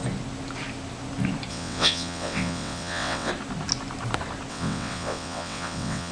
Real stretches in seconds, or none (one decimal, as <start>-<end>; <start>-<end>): 0.0-1.5; 3.3-4.5